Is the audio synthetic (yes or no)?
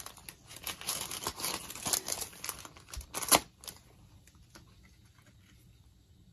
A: no